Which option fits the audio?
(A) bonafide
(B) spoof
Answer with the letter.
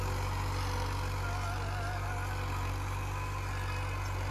A